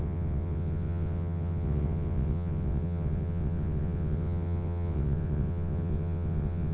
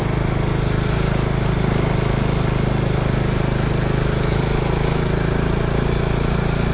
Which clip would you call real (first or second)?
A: second